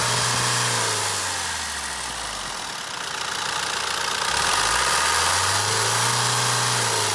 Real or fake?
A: real